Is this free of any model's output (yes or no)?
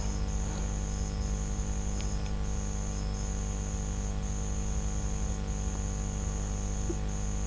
yes